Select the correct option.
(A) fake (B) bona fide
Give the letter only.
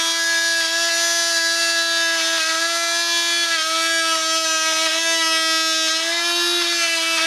B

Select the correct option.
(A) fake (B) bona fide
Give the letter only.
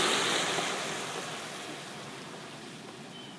B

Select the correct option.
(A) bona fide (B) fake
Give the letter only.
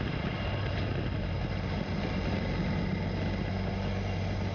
A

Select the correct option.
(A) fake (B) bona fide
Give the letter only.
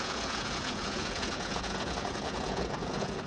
A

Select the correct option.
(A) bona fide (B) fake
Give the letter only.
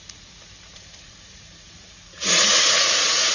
B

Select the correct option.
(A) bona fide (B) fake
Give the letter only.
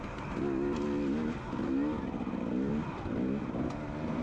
A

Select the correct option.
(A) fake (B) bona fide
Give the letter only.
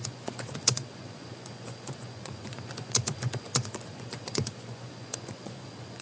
A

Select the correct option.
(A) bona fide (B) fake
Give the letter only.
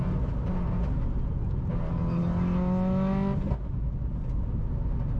A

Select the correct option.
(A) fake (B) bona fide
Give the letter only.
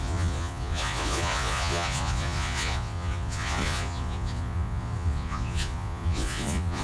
A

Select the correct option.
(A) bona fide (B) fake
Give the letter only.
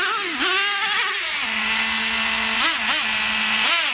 A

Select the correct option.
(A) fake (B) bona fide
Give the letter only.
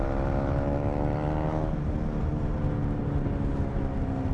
B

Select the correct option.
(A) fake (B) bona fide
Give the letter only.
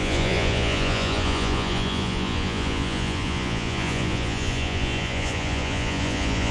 A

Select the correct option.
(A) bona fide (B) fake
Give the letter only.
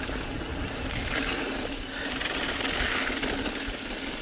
A